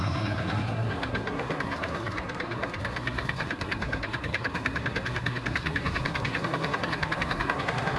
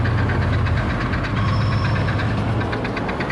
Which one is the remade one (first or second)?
first